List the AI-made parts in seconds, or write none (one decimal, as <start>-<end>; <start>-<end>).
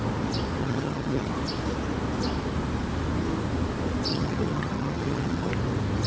0.6-1.3; 4.1-5.5